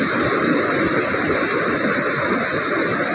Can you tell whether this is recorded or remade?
recorded